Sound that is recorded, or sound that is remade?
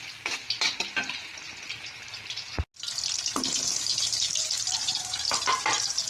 recorded